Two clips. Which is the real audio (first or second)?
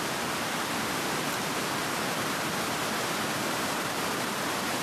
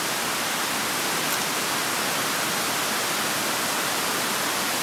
second